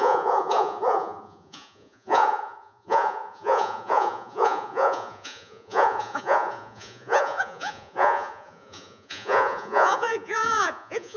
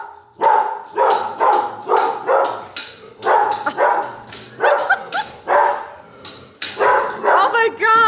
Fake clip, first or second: first